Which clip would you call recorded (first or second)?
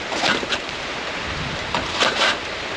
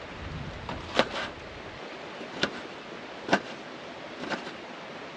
second